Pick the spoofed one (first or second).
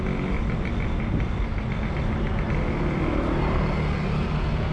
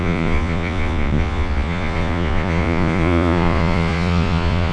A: second